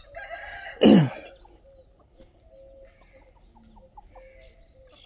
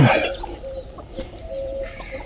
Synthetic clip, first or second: second